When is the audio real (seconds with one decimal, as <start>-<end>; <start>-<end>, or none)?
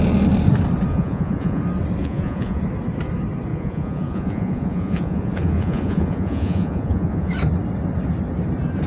0.0-0.9; 1.6-2.0; 2.6-3.5; 7.3-8.9